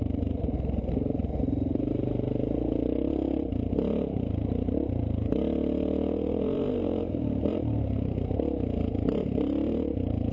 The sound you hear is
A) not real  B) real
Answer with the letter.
A